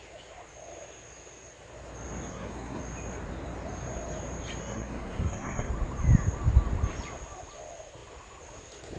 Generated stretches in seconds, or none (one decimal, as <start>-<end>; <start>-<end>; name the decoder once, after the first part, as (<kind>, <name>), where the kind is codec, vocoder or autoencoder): 2.3-2.8 (codec, SNAC); 4.6-5.7